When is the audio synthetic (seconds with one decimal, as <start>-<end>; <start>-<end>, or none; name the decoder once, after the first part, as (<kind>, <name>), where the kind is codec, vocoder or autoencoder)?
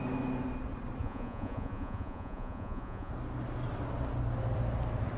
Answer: 1.0-3.1 (vocoder, Vocos)